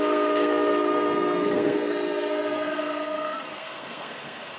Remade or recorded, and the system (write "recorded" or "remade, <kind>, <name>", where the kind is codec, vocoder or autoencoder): remade, codec, SNAC